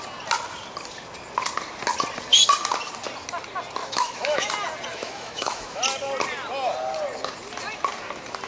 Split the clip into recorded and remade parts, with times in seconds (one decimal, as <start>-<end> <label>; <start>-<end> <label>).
0.0-3.8 recorded; 3.8-4.5 remade; 4.5-4.9 recorded; 4.9-5.8 remade; 5.8-8.5 recorded